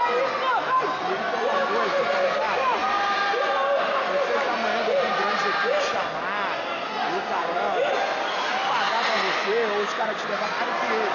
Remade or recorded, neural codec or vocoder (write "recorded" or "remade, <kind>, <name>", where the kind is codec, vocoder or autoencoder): recorded